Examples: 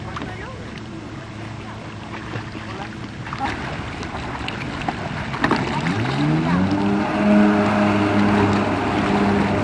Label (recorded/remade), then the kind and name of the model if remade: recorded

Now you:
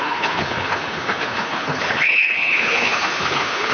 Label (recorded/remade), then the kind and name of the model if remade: remade, codec, HILCodec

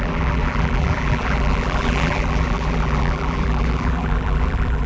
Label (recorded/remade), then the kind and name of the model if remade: remade, vocoder, BigVGAN v2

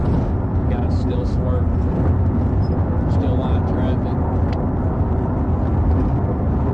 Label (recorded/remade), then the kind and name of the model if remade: recorded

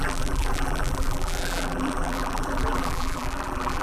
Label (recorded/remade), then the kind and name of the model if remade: remade, vocoder, BigVGAN v2